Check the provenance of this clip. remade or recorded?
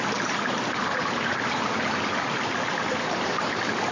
recorded